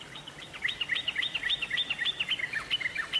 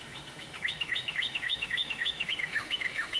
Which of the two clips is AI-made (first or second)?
second